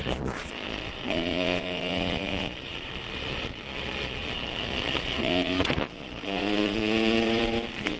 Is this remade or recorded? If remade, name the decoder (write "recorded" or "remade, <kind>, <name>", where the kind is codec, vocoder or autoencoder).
remade, vocoder, Vocos